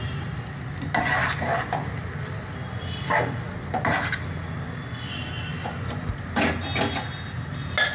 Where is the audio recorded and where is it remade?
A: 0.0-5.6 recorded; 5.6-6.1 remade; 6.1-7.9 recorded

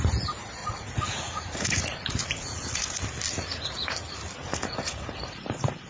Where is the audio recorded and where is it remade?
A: 0.0-0.6 recorded; 0.6-3.0 remade; 3.0-4.4 recorded; 4.4-5.9 remade

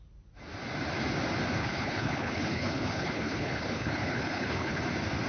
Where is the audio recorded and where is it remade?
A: 0.0-1.6 recorded; 1.6-4.8 remade; 4.8-5.3 recorded

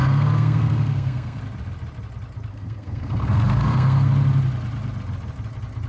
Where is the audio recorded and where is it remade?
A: 0.0-1.4 remade; 1.4-2.5 recorded; 2.5-4.1 remade; 4.1-5.9 recorded

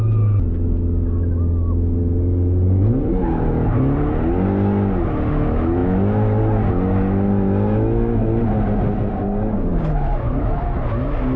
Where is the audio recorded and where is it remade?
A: 0.0-11.4 recorded

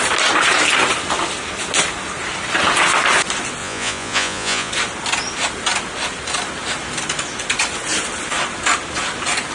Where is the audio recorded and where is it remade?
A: 0.0-3.6 recorded; 3.6-4.7 remade; 4.7-9.5 recorded